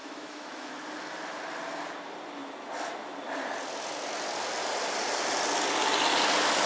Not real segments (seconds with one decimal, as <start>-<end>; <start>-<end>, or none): 0.0-0.7